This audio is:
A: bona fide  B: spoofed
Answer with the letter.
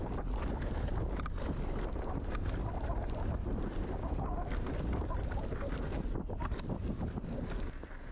A